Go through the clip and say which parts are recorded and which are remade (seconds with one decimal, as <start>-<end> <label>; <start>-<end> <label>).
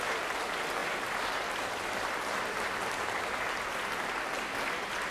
0.0-5.1 recorded